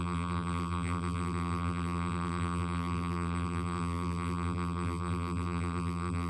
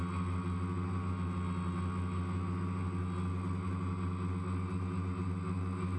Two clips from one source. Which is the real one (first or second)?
second